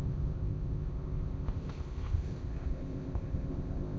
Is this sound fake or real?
fake